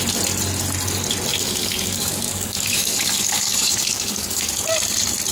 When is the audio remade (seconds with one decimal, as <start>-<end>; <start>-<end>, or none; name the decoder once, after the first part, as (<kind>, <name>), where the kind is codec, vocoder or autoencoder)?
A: 1.3-4.5 (codec, DAC)